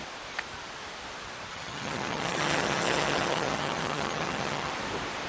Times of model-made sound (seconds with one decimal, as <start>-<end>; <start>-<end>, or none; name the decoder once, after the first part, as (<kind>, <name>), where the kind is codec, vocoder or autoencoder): 1.5-4.7 (vocoder, HiFi-GAN)